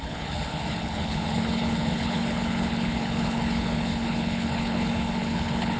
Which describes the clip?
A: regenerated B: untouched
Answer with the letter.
A